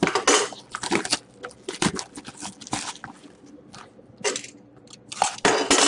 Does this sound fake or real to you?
real